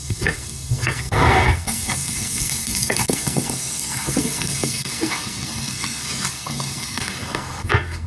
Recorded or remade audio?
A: remade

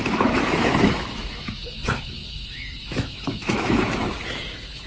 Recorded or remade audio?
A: remade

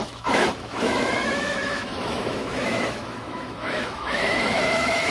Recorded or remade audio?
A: remade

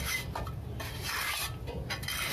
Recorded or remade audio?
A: recorded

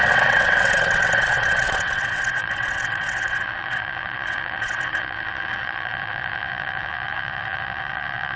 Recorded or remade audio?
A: remade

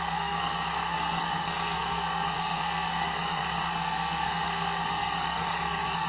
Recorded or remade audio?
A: remade